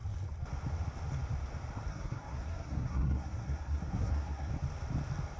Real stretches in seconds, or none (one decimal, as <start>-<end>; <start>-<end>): 0.0-1.9; 4.5-5.4